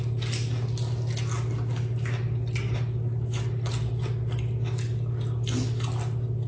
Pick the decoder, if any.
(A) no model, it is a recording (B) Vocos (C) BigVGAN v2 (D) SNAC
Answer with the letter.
A